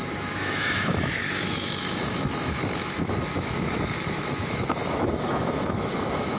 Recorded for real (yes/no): no